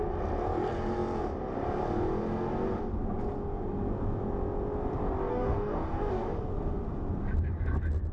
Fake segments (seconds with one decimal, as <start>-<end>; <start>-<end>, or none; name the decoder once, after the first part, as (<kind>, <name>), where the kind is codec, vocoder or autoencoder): 5.3-6.3 (codec, DAC)